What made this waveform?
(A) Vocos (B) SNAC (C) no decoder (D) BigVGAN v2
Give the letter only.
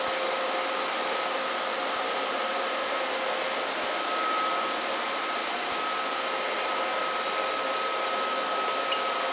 C